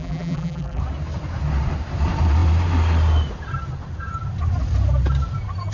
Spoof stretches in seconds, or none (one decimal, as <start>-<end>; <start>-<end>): 0.0-0.8